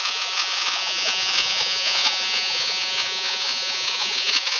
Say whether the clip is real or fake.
fake